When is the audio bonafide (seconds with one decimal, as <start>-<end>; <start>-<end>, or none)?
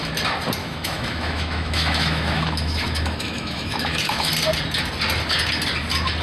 0.0-0.6; 4.3-6.2